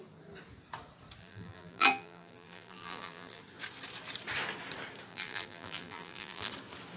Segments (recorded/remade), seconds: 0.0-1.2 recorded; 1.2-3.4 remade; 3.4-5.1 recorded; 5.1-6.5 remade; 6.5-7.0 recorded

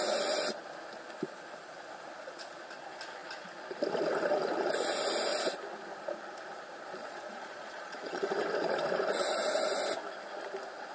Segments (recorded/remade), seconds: 0.0-7.0 recorded; 7.0-8.3 remade; 8.3-10.9 recorded

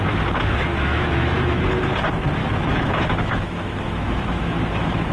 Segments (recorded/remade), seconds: 0.0-0.7 recorded; 0.7-1.6 remade; 1.6-2.4 recorded; 2.4-5.1 remade